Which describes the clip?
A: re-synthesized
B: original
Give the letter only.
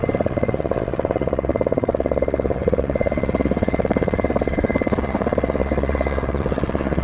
A